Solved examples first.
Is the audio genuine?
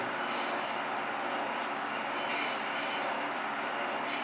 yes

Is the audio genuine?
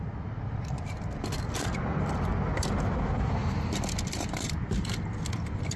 yes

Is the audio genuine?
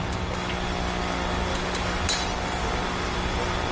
yes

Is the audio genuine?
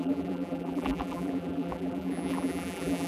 no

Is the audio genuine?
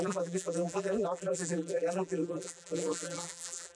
no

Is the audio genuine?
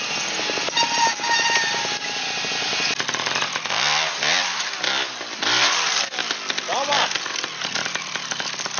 yes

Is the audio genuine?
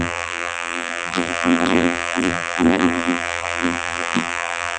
no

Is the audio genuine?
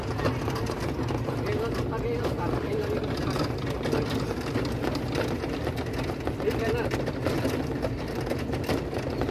yes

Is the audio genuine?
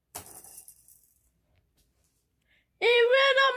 no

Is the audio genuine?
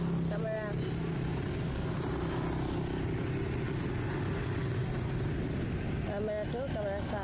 yes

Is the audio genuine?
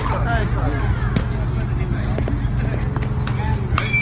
yes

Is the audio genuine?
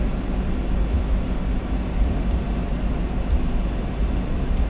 yes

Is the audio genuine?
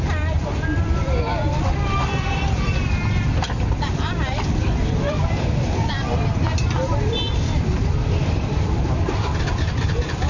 no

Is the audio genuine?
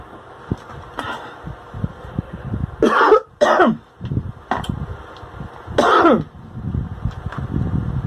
yes